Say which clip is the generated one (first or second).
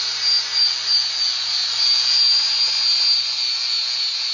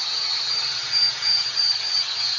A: second